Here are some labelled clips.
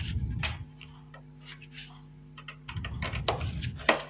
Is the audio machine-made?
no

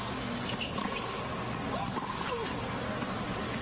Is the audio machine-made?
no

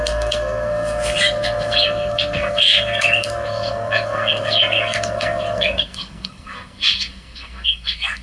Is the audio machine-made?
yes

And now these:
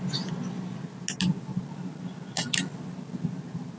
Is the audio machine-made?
no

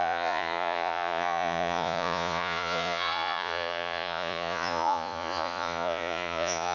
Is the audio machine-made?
yes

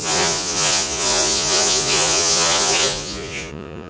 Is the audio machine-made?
yes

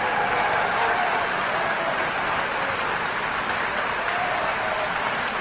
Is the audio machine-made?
yes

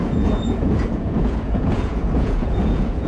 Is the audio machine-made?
yes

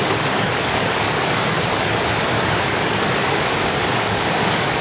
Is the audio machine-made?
yes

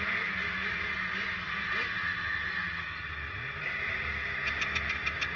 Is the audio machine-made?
no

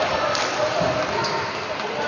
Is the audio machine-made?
no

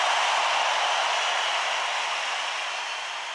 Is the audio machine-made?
no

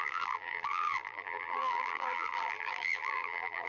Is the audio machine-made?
yes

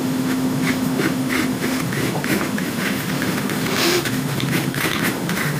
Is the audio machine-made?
yes